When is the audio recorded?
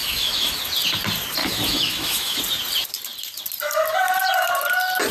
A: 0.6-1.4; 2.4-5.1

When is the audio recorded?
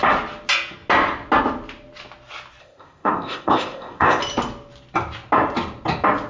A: 0.0-2.6; 4.2-6.3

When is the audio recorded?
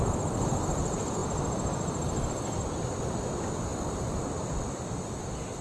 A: 0.0-5.6